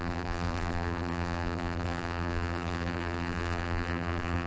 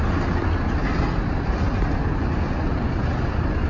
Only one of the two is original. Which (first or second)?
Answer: second